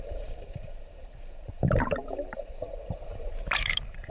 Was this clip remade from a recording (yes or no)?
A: yes